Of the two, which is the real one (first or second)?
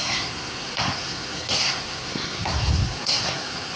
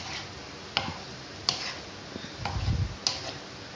second